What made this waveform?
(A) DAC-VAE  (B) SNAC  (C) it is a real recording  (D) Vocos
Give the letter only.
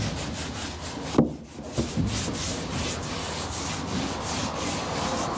C